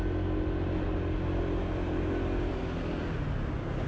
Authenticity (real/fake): real